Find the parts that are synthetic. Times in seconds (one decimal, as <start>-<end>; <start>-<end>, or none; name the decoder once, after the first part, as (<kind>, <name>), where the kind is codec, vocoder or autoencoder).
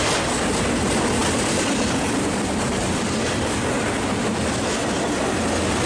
none